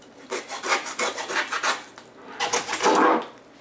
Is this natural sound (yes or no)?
yes